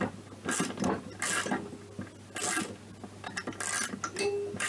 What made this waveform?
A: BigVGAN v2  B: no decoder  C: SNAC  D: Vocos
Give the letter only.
B